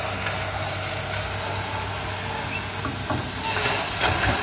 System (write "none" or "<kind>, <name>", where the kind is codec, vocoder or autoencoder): none